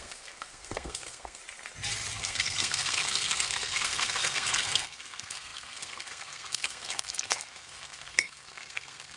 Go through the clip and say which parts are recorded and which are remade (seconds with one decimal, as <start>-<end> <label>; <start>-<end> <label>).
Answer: 0.0-1.4 remade; 1.4-2.2 recorded; 2.2-9.2 remade